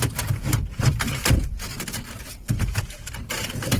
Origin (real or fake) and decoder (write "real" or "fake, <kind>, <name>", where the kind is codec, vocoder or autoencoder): fake, vocoder, BigVGAN v2